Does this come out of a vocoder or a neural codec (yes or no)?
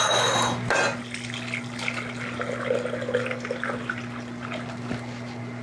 no